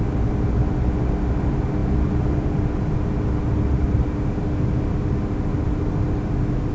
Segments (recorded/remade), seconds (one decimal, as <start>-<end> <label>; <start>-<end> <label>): 0.0-6.7 recorded